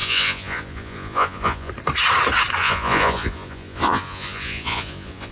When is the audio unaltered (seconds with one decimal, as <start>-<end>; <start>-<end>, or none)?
1.7-2.6